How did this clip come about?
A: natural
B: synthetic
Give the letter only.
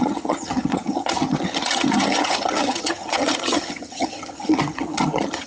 B